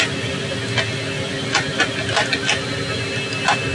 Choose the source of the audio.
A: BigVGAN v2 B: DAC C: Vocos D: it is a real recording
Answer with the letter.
D